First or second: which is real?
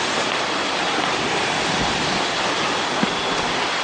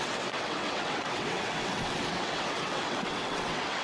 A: first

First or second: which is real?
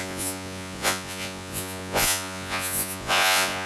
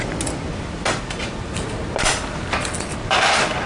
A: second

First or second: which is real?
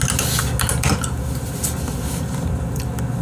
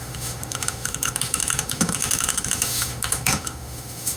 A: first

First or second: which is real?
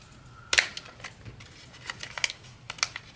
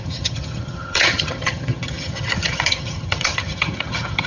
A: first